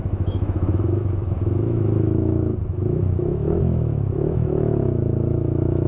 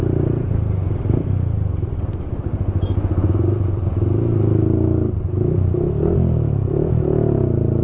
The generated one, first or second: first